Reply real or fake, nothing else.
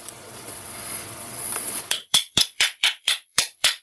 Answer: fake